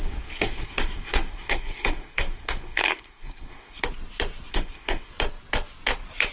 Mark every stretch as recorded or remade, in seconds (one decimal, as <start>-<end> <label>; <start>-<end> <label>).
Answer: 0.0-3.8 remade; 3.8-4.5 recorded; 4.5-5.1 remade; 5.1-6.3 recorded